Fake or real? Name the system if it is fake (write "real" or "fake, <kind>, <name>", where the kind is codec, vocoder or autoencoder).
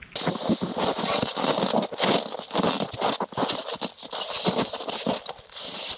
real